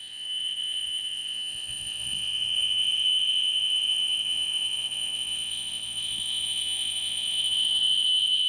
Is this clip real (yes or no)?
no